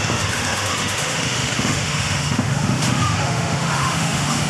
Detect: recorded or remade remade